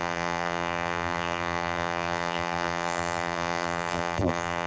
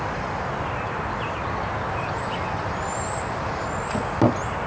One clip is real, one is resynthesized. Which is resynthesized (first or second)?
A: first